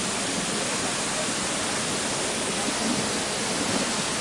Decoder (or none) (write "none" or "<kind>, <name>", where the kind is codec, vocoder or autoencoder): none